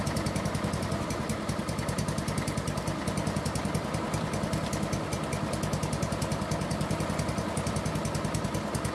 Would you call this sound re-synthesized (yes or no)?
no